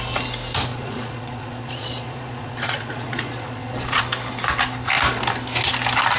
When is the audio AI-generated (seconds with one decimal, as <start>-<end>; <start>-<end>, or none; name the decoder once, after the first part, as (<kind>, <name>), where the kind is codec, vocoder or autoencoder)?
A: 0.7-4.0 (vocoder, Vocos)